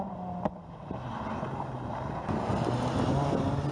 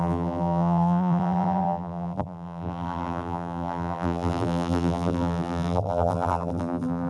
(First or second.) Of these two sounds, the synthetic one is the second